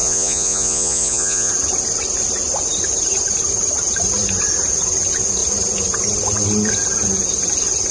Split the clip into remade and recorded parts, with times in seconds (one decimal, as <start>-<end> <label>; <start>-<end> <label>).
0.0-1.5 remade; 1.5-7.9 recorded

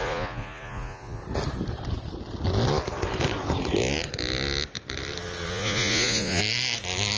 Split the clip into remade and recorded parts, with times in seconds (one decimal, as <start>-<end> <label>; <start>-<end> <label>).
0.0-1.2 remade; 1.2-5.5 recorded; 5.5-6.4 remade; 6.4-7.2 recorded